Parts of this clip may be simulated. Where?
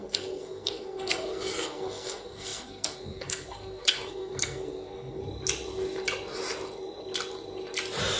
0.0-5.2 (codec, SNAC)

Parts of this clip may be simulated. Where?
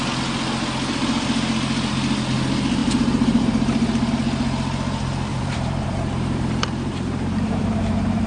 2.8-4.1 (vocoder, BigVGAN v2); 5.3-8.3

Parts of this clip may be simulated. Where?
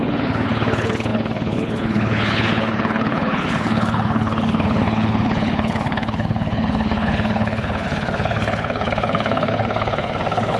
0.0-10.6 (codec, HILCodec)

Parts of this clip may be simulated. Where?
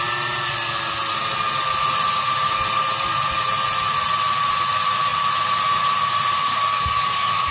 6.7-7.5 (codec, DAC)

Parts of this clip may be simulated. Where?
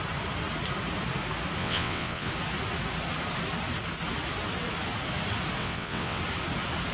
1.6-2.3 (vocoder, WaveNeXt); 5.6-6.2